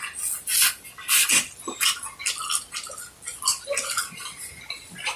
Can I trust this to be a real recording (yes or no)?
yes